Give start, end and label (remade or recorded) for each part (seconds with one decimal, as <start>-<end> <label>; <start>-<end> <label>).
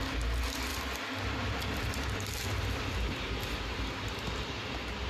0.0-5.1 recorded